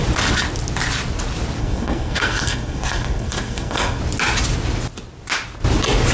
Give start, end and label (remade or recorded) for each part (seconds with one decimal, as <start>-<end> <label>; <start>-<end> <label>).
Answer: 0.0-1.6 recorded; 1.6-4.0 remade; 4.0-6.1 recorded